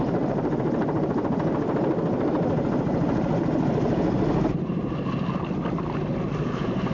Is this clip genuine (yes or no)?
yes